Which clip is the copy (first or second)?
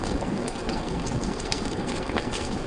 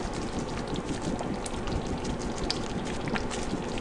first